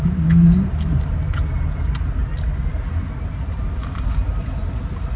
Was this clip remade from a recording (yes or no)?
no